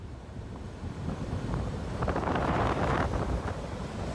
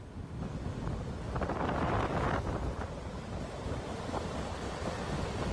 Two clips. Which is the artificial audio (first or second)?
first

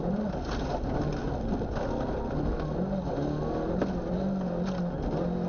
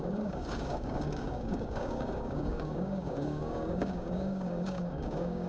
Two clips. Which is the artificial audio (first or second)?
second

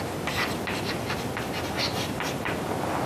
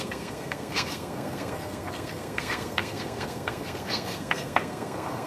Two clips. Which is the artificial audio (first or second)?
second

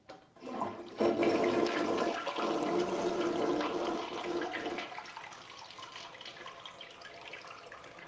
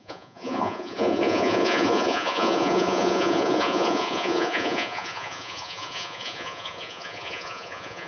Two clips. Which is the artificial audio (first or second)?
second